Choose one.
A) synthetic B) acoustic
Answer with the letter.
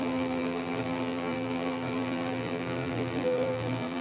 A